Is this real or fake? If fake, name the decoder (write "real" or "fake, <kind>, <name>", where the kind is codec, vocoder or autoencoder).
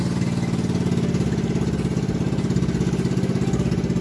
real